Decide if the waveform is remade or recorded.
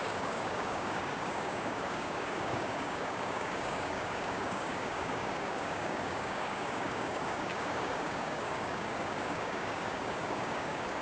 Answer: remade